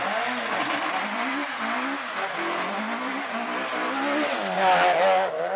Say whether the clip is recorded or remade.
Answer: recorded